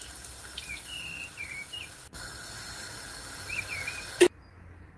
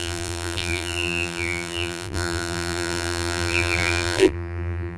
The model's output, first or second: second